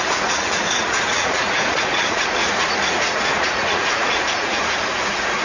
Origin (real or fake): fake